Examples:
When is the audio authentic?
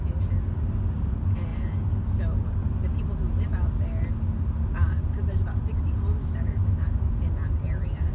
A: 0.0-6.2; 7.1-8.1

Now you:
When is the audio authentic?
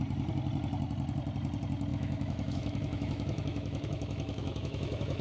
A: 0.0-1.9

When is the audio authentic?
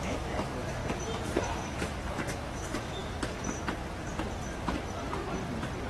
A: 0.8-1.4; 3.0-5.9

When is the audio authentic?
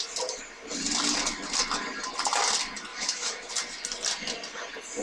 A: 0.0-2.9; 3.5-5.0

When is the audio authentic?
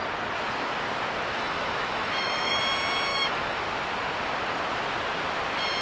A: 0.0-1.3; 2.6-3.1; 3.6-5.8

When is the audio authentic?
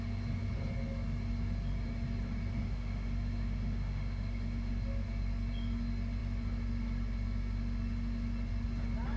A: 0.0-2.6; 4.7-9.2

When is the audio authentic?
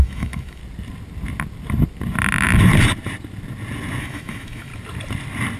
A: 0.6-4.0; 4.7-5.6